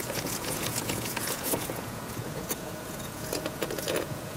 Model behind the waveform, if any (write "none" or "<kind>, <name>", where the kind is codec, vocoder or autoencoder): vocoder, Vocos